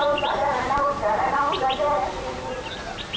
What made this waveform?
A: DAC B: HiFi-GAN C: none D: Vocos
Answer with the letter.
C